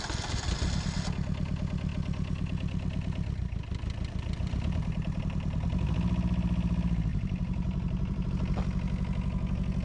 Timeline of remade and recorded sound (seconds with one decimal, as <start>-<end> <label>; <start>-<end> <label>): 0.0-7.1 recorded; 7.1-8.3 remade; 8.3-9.8 recorded